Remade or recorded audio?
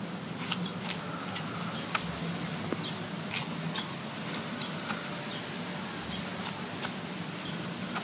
recorded